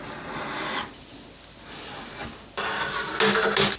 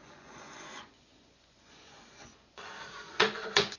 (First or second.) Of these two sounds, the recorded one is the first